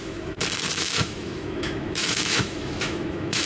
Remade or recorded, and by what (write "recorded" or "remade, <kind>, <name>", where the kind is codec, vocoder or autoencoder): remade, autoencoder, DAC-VAE